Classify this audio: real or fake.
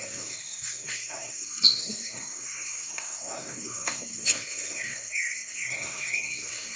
fake